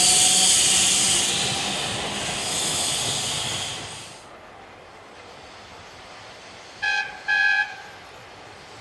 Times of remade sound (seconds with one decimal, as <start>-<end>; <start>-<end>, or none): 2.4-3.0